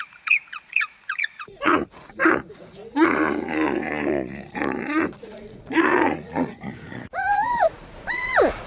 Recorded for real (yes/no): no